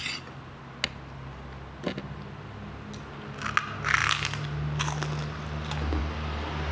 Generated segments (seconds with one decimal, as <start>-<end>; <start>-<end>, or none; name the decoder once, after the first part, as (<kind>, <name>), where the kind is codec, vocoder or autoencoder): none